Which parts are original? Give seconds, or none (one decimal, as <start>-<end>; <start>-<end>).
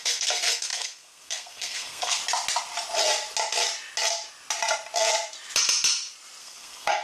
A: 2.2-6.4